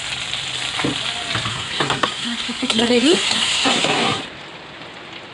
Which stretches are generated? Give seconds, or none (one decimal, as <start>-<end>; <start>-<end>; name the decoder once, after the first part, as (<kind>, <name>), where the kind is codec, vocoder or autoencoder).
1.5-4.2 (codec, SNAC)